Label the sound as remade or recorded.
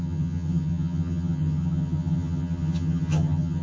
remade